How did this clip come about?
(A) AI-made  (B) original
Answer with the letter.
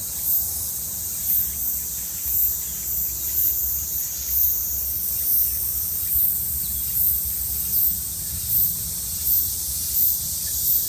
A